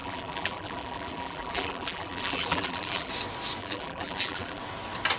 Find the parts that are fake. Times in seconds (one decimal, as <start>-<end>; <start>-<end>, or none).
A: 0.0-3.1; 3.6-4.6